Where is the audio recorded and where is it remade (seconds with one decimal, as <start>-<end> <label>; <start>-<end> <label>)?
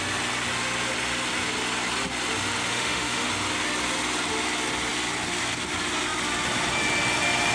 0.0-2.7 recorded; 2.7-3.3 remade; 3.3-7.5 recorded